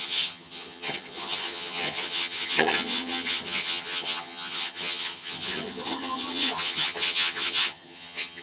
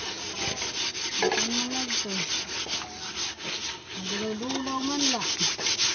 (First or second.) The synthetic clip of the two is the first